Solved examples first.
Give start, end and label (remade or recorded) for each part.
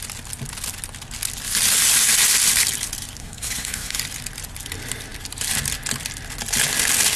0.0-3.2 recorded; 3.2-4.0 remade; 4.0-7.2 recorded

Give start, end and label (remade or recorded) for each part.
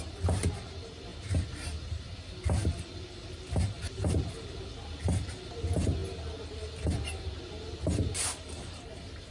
0.0-9.3 recorded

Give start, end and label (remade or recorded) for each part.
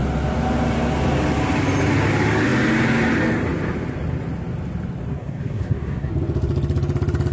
0.0-5.1 recorded; 5.1-6.1 remade; 6.1-7.3 recorded